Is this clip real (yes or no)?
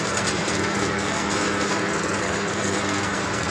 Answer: no